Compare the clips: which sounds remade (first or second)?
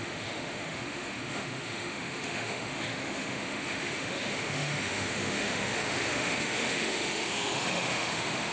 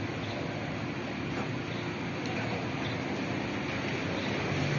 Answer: first